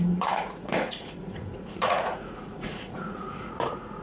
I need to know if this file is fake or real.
fake